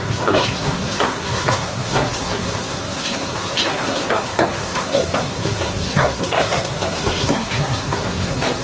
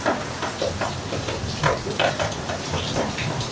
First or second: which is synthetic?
first